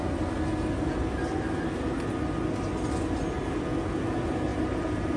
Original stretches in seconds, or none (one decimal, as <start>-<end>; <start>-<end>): 0.0-4.5